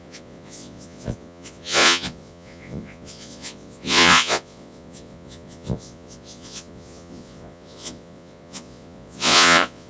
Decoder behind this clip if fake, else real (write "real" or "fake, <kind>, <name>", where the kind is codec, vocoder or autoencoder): fake, vocoder, Vocos